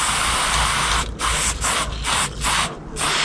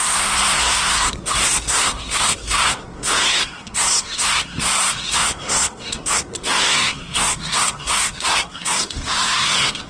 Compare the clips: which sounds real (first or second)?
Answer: first